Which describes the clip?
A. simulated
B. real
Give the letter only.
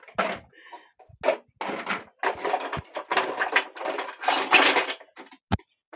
B